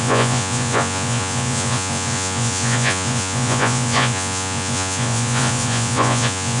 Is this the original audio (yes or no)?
no